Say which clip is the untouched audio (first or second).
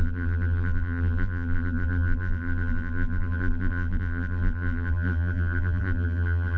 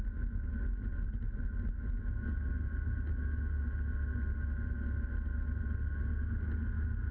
second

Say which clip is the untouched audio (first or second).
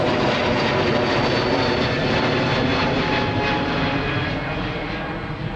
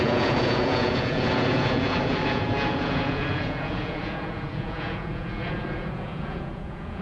first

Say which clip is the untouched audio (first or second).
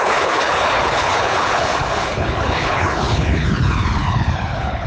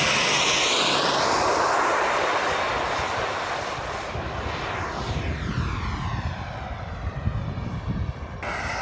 second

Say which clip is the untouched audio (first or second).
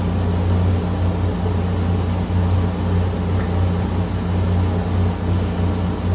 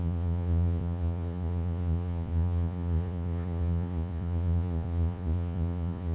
first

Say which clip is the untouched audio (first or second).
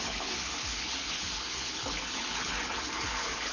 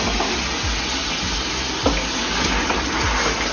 second